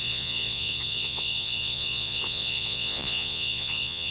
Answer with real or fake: fake